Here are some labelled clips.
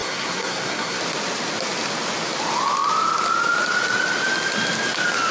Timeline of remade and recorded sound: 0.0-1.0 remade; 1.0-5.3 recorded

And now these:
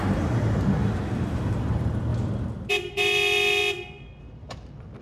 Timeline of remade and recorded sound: 0.0-0.8 remade; 0.8-1.6 recorded; 1.6-2.1 remade; 2.1-2.7 recorded; 2.7-3.6 remade; 3.6-4.2 recorded; 4.2-5.0 remade

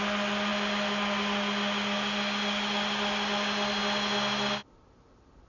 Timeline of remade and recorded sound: 0.0-5.5 recorded

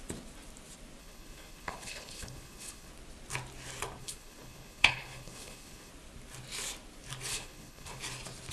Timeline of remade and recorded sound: 0.0-1.0 recorded; 1.0-2.9 remade; 2.9-4.0 recorded; 4.0-5.9 remade; 5.9-7.3 recorded; 7.3-8.0 remade; 8.0-8.5 recorded

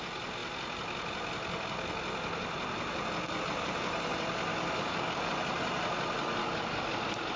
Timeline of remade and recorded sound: 0.0-4.5 recorded; 4.5-5.3 remade; 5.3-6.4 recorded; 6.4-6.9 remade; 6.9-7.4 recorded

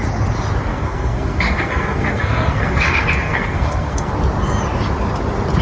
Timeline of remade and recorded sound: 0.0-0.7 recorded; 0.7-4.1 remade; 4.1-5.6 recorded